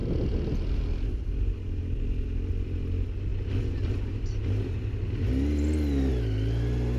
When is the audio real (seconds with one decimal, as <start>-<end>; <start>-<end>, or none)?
0.0-7.0